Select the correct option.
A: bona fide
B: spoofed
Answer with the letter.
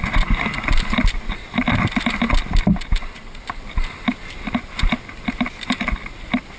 A